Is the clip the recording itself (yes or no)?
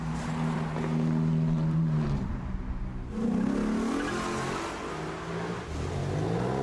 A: yes